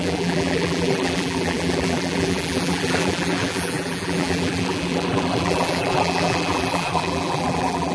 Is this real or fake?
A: fake